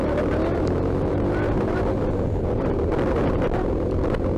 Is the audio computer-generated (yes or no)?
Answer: yes